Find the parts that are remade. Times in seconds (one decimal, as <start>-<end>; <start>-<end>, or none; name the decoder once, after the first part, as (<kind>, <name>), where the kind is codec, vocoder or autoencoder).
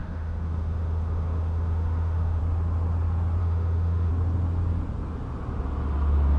0.0-2.4 (autoencoder, DAC-VAE); 3.4-4.1